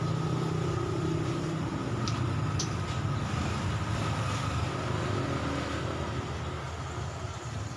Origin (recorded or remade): recorded